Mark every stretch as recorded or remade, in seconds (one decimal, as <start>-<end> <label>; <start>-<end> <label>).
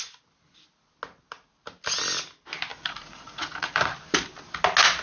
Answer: 0.0-2.7 recorded; 2.7-3.9 remade; 3.9-5.0 recorded